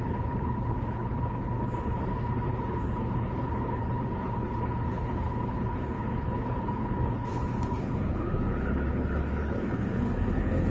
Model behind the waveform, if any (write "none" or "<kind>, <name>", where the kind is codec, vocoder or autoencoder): codec, HILCodec